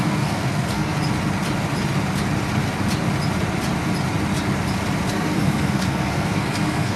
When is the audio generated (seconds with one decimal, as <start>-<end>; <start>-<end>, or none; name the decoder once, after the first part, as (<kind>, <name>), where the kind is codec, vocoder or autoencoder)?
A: 0.0-0.9 (codec, SNAC); 5.1-7.0